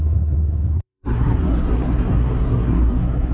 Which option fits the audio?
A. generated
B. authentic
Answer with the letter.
A